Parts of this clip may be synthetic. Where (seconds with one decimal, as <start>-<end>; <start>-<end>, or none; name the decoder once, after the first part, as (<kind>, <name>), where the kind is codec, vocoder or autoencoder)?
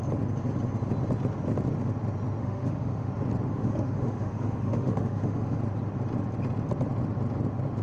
2.4-3.1 (autoencoder, DAC-VAE); 3.5-5.6